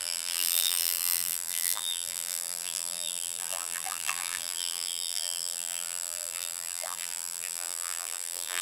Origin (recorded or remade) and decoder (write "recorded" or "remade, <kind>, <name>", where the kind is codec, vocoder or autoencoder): remade, vocoder, BigVGAN v2